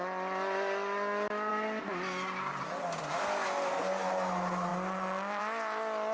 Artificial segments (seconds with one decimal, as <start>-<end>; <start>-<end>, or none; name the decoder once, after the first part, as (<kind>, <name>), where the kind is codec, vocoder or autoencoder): none